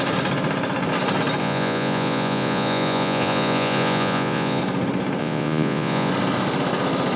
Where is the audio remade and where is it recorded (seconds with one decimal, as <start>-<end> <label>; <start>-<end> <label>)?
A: 0.0-1.4 recorded; 1.4-4.6 remade; 4.6-5.2 recorded; 5.2-6.1 remade; 6.1-7.2 recorded